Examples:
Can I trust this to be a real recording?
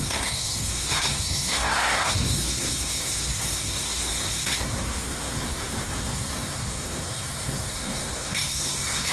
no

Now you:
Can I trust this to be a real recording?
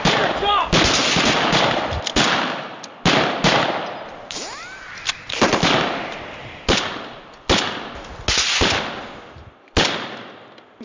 yes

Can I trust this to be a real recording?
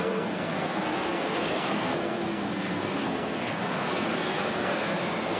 no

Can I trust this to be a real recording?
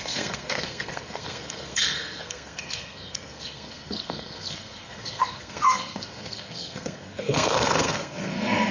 no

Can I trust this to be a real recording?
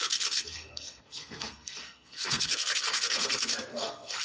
no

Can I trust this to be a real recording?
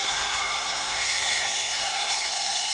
no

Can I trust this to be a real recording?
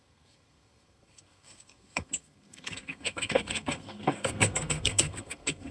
no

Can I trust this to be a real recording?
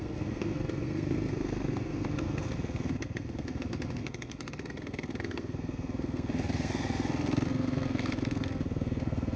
no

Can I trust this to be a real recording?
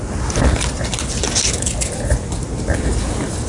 yes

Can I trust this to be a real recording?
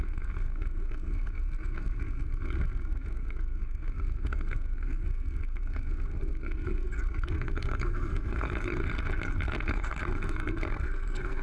no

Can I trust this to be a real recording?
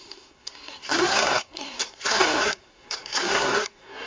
no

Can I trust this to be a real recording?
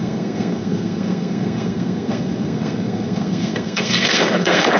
no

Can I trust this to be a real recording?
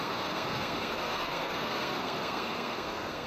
no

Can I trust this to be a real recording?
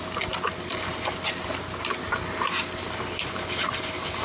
yes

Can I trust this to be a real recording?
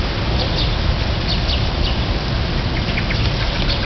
yes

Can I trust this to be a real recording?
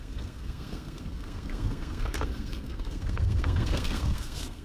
no